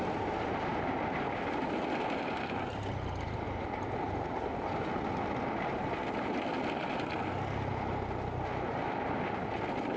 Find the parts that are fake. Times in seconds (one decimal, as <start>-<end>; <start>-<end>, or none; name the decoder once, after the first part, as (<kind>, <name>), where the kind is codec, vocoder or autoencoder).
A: none